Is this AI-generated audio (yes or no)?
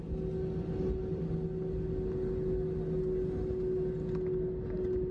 no